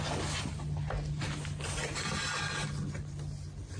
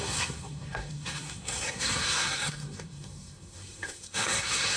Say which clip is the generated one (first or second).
second